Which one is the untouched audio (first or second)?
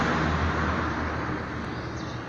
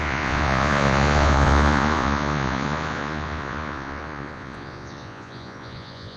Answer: first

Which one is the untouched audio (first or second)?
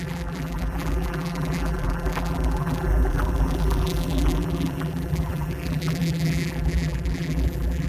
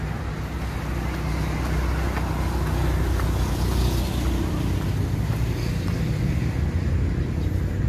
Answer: second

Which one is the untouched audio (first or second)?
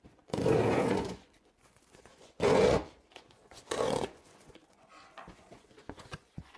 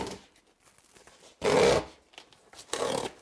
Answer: second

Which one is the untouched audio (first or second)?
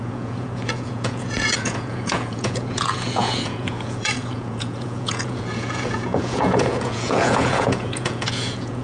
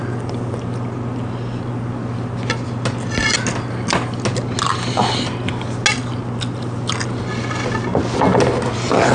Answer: second